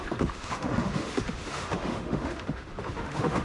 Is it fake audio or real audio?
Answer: fake